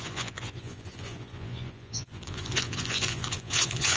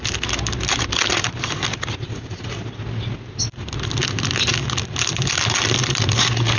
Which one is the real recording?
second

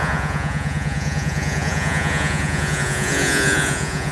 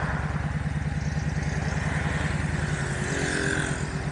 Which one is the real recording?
second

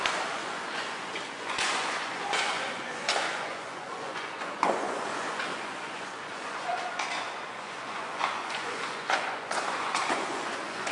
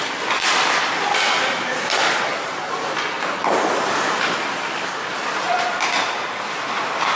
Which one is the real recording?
second